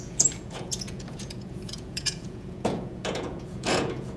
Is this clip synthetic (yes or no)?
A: yes